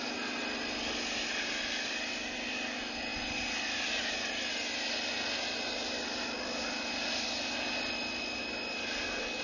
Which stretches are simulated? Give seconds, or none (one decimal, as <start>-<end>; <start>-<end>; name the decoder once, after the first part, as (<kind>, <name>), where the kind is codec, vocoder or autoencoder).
none